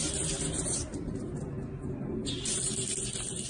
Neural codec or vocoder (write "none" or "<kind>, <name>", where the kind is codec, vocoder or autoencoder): vocoder, BigVGAN v2